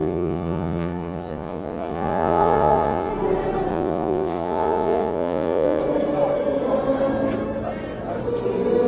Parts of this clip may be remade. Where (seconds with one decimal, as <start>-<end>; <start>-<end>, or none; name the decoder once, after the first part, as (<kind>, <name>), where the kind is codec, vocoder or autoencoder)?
0.0-3.1 (vocoder, Vocos); 3.7-5.8